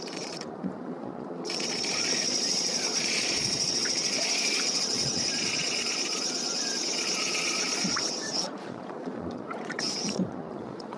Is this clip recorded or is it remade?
remade